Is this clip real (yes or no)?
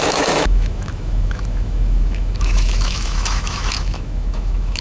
no